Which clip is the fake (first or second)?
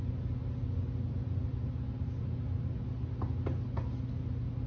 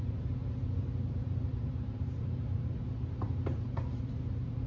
second